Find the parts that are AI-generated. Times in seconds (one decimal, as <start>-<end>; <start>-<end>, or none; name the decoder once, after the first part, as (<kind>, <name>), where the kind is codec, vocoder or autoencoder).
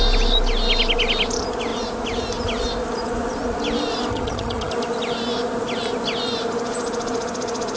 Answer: 4.1-4.7 (vocoder, HiFi-GAN)